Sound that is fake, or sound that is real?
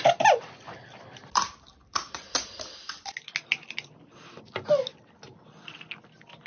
real